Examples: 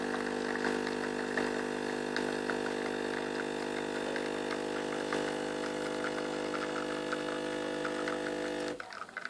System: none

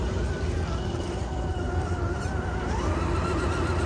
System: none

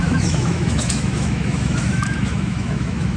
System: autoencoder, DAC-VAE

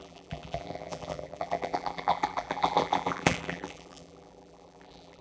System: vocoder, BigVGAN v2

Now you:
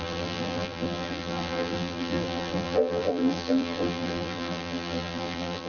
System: vocoder, BigVGAN v2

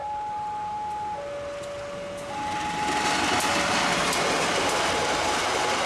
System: none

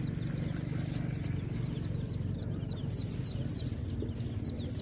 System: none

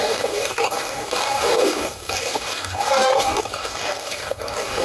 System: codec, DAC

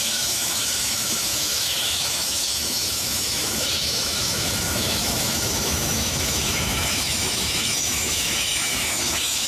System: autoencoder, DAC-VAE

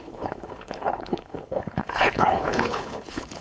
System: codec, HILCodec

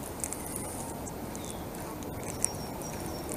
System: none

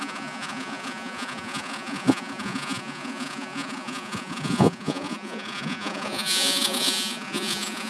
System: vocoder, Vocos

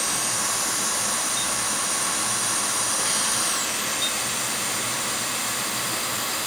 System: none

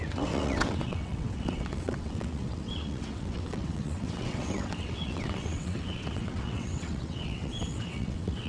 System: vocoder, WaveNeXt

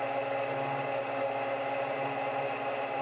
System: none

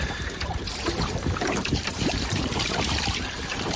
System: vocoder, BigVGAN v2